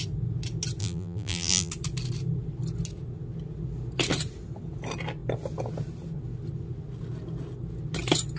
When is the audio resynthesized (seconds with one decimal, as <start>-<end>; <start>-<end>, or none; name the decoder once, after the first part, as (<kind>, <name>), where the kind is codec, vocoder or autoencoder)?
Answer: 0.8-1.7 (vocoder, BigVGAN v2)